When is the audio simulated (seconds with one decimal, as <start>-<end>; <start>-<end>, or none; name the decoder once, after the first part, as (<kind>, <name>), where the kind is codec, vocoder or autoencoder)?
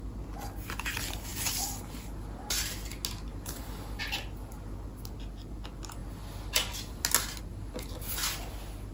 none